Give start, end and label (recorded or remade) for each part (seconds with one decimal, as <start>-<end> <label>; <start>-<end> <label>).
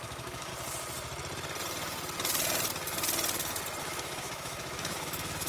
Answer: 0.0-0.5 remade; 0.5-3.8 recorded; 3.8-5.5 remade